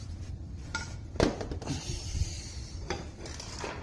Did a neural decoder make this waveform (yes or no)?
yes